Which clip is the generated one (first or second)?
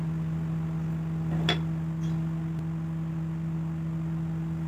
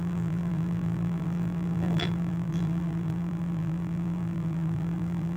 second